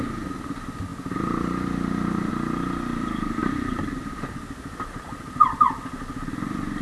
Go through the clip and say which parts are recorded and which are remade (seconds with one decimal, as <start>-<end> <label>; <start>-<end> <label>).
0.0-0.9 recorded; 0.9-2.3 remade; 2.3-3.4 recorded; 3.4-5.8 remade; 5.8-6.8 recorded